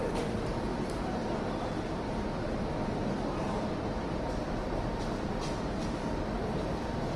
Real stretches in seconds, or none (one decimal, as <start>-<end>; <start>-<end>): none